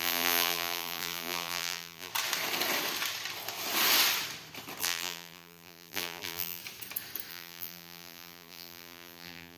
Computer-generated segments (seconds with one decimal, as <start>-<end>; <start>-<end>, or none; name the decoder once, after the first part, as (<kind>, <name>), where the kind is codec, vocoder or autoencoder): 0.0-2.1 (vocoder, BigVGAN v2); 4.8-6.6; 7.3-9.6